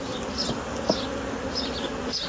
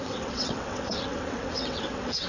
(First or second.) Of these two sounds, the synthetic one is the second